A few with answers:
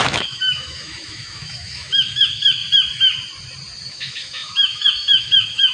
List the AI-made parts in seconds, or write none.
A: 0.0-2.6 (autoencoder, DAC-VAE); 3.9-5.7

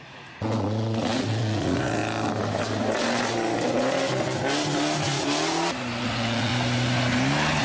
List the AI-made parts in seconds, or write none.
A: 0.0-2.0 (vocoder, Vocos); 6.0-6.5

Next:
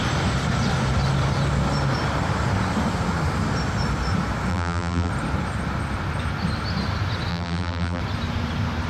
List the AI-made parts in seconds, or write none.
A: 4.5-5.1 (vocoder, BigVGAN v2); 7.3-8.0

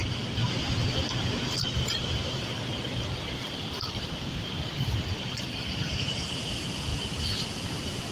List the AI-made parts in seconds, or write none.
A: 0.0-0.4 (vocoder, BigVGAN v2); 1.6-8.1